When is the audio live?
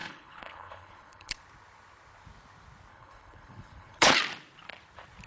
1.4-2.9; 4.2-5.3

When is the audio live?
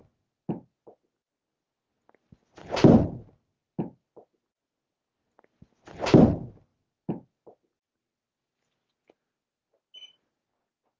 0.0-11.0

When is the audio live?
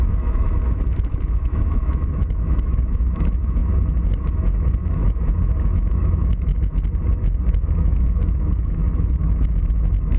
3.6-4.3; 6.5-7.5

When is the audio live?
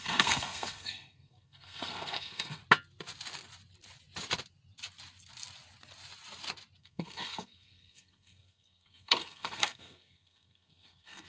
2.6-6.8